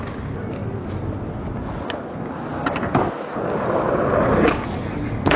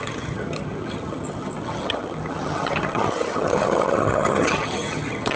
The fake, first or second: second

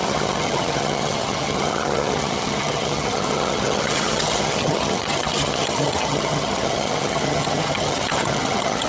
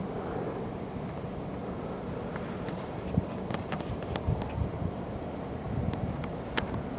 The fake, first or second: first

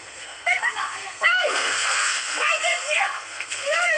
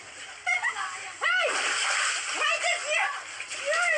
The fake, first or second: first